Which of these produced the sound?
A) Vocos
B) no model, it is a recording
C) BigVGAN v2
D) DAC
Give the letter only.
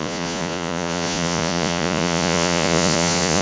A